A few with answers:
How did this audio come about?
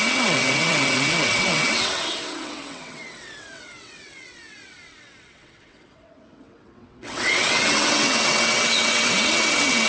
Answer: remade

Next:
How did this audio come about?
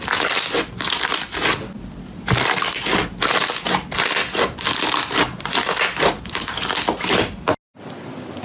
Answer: recorded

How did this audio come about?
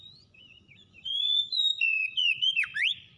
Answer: remade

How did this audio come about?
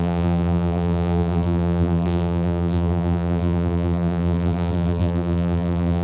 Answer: remade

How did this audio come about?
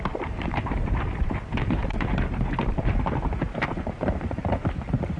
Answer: remade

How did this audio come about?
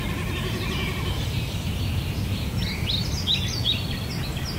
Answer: recorded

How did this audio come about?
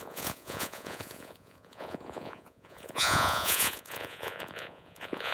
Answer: remade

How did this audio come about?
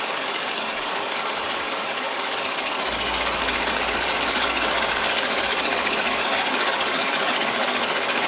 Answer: remade